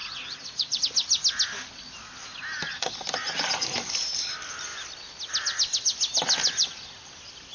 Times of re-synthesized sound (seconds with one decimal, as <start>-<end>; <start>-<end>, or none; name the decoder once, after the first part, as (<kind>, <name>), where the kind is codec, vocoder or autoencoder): 0.0-0.8 (vocoder, Vocos)